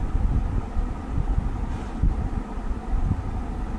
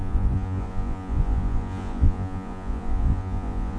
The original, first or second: first